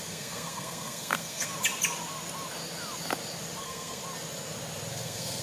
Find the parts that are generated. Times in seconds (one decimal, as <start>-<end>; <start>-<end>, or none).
0.0-1.5; 3.6-4.0; 4.9-5.4